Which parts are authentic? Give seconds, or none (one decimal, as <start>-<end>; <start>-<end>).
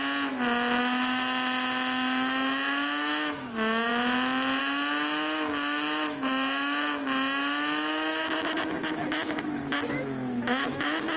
0.0-0.8; 3.9-4.6